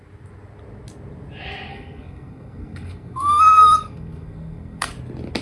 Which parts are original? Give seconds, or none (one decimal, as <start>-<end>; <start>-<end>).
0.0-1.7; 4.9-5.4